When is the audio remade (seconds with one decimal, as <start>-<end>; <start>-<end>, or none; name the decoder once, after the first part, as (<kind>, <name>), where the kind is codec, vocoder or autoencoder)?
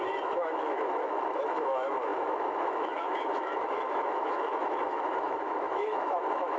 0.0-6.6 (autoencoder, DAC-VAE)